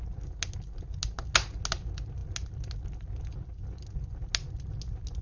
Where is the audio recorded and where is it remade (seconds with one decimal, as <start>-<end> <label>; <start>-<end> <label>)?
0.0-5.2 recorded